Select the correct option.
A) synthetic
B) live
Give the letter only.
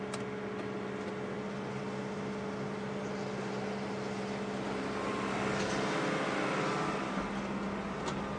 B